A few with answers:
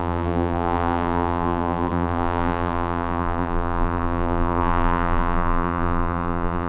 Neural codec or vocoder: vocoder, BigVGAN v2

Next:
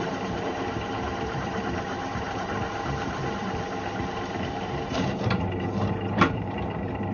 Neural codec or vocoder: vocoder, BigVGAN v2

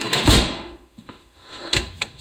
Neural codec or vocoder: autoencoder, DAC-VAE